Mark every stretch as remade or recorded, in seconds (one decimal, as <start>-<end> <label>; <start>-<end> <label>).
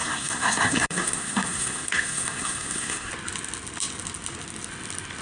0.0-3.1 remade; 3.1-5.2 recorded